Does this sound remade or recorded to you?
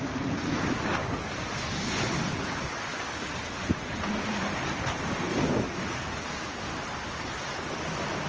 recorded